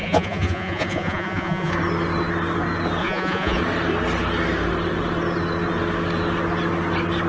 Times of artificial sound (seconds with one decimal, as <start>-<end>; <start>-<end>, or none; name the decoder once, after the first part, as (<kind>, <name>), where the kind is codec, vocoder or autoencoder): 0.0-1.7 (vocoder, Vocos); 3.0-3.6